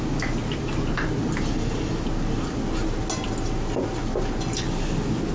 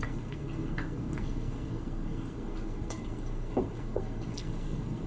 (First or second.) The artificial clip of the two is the second